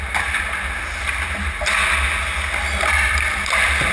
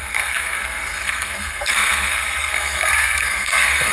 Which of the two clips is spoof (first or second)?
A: second